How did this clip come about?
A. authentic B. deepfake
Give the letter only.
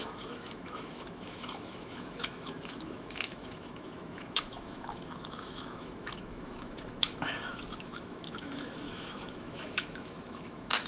B